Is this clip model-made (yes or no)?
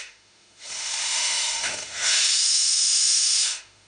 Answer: yes